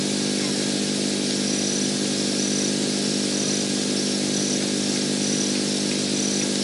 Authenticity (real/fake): real